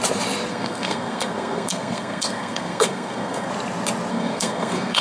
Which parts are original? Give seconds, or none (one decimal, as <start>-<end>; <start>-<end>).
0.0-0.5; 3.5-4.1

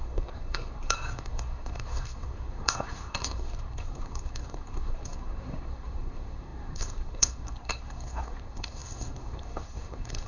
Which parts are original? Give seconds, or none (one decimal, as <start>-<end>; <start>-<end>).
none

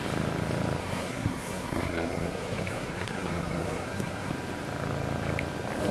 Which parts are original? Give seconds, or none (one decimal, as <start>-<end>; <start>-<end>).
0.0-0.8; 4.3-5.9

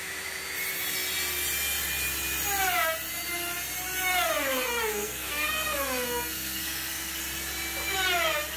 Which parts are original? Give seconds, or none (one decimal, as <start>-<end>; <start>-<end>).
0.0-4.1; 7.2-8.6

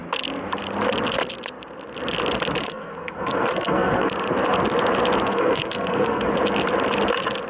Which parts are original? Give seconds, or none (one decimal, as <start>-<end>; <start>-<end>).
0.0-2.6; 4.1-5.3; 6.3-7.5